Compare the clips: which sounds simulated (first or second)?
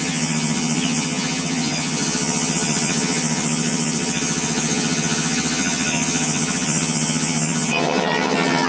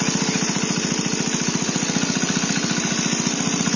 first